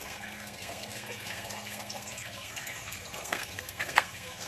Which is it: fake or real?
fake